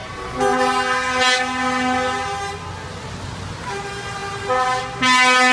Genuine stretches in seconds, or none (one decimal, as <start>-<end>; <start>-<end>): 0.0-5.5